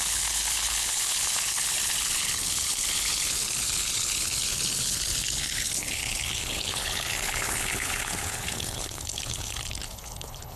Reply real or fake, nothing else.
fake